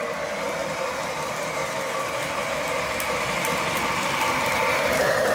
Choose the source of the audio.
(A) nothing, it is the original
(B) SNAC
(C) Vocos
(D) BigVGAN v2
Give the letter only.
A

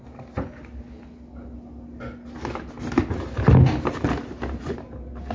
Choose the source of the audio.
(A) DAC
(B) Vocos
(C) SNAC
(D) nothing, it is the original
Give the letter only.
D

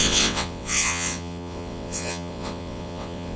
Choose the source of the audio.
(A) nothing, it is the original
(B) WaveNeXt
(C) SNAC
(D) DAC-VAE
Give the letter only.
B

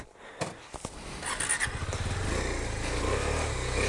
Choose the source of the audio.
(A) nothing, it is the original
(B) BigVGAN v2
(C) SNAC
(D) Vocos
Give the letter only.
A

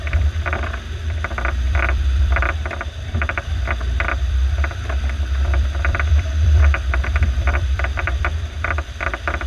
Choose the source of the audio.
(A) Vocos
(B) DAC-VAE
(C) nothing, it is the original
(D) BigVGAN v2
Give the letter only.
D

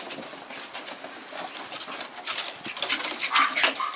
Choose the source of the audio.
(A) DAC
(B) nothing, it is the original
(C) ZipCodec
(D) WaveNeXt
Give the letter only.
B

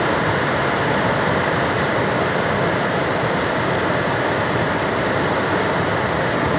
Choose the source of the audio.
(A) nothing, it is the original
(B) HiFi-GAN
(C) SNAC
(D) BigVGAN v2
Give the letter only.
A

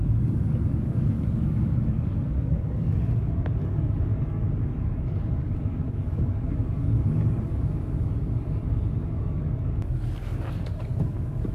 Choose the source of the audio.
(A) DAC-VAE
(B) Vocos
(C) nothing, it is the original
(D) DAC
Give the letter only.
D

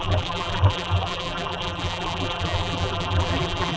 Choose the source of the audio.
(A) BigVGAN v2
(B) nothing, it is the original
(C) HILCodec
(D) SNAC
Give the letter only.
A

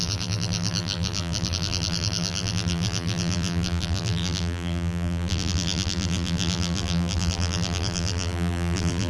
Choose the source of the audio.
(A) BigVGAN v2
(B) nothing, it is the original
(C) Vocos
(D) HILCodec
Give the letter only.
A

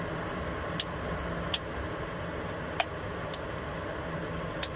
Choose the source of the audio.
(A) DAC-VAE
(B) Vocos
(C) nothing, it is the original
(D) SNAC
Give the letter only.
C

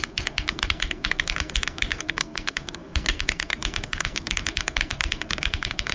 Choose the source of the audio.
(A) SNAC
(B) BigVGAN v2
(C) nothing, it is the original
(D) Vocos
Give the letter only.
A